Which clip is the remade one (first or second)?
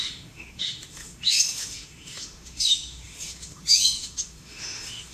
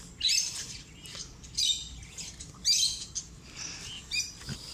first